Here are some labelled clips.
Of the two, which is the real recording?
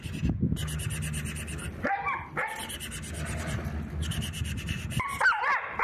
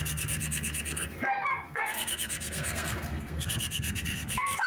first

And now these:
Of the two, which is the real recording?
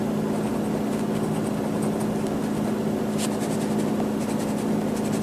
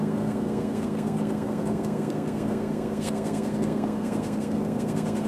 first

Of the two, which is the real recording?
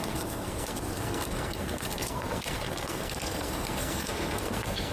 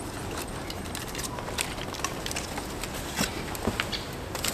second